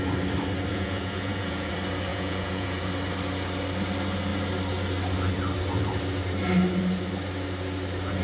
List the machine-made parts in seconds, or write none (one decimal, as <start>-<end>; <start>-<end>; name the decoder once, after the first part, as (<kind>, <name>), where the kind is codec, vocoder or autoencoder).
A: 0.7-1.7 (vocoder, Vocos); 2.1-2.9